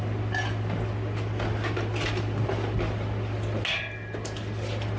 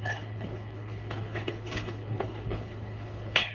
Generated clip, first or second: second